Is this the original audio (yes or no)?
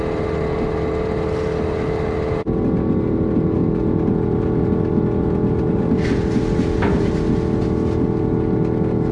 yes